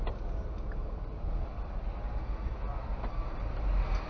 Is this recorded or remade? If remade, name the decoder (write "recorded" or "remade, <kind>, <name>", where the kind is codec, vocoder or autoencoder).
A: recorded